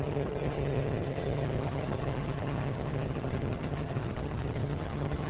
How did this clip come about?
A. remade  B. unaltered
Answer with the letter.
A